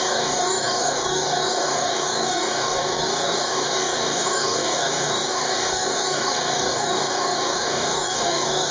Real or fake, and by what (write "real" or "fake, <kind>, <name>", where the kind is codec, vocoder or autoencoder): fake, codec, DAC